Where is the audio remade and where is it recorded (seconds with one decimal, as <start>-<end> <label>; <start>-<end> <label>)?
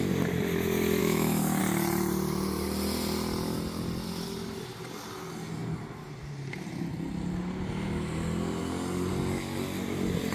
0.0-1.0 recorded; 1.0-1.6 remade; 1.6-10.3 recorded